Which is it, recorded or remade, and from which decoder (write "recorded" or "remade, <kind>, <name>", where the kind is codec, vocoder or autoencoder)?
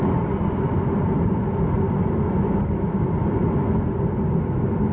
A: recorded